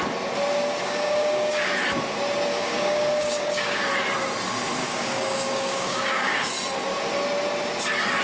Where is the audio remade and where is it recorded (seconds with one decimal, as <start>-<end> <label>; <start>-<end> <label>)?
0.0-0.8 recorded; 0.8-1.7 remade; 1.7-2.5 recorded; 2.5-3.9 remade; 3.9-4.8 recorded; 4.8-6.5 remade; 6.5-8.2 recorded